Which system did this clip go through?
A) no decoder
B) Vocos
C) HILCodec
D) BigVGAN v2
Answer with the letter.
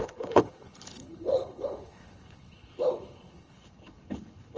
C